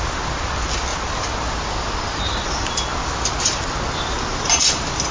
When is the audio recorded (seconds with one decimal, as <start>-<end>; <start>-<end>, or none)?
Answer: 0.0-5.1